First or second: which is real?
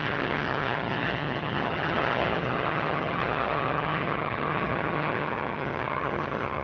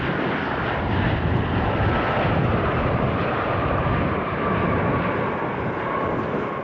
second